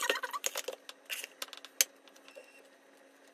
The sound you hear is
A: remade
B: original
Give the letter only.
B